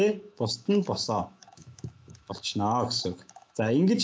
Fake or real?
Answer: fake